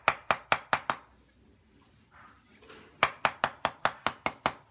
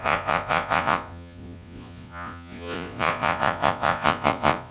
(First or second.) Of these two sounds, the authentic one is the first